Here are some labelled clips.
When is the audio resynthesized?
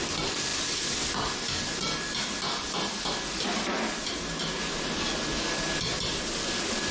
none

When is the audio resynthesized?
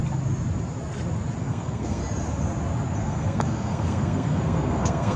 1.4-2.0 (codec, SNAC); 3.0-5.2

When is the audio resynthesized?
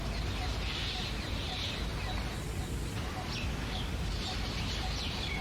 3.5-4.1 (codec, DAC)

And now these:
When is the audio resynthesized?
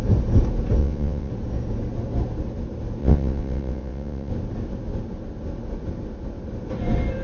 0.8-1.3 (vocoder, WaveNeXt); 3.0-4.3